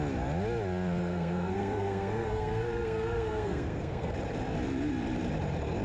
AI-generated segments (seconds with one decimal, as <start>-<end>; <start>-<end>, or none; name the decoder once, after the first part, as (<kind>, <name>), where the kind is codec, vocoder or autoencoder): 1.0-4.1 (codec, SNAC)

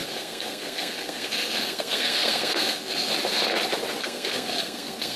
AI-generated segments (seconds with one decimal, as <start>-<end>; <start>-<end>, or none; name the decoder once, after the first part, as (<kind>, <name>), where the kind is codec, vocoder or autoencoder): 0.0-3.1 (codec, SNAC); 4.0-5.2

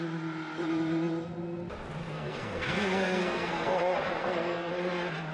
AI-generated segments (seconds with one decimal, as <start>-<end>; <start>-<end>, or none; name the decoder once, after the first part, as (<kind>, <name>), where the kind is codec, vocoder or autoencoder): 2.0-3.8 (codec, SNAC); 4.2-4.7

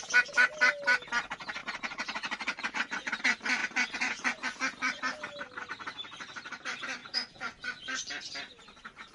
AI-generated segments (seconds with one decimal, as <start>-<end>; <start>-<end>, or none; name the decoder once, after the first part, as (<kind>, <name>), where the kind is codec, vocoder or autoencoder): 1.6-3.2 (vocoder, Vocos); 3.6-5.0; 7.0-8.1

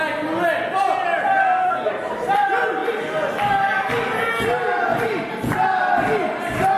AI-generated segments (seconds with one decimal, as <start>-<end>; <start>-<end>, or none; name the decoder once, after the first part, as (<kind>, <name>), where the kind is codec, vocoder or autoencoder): 1.4-1.9 (codec, SNAC)

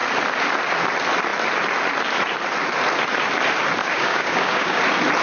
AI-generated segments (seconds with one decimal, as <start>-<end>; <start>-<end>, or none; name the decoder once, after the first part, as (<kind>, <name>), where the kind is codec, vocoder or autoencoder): 3.8-4.8 (codec, DAC)

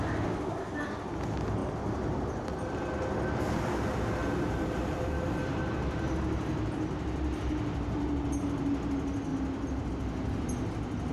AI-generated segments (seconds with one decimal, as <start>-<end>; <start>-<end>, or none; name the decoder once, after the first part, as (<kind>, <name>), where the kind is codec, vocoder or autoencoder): 4.2-5.4 (vocoder, BigVGAN v2); 9.3-9.9

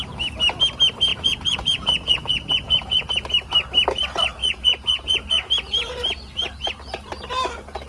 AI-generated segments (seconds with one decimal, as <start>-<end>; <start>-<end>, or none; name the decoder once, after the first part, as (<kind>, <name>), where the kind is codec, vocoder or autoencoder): 1.1-3.1 (vocoder, Vocos); 4.4-5.5